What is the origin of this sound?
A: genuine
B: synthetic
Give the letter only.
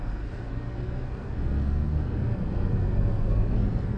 B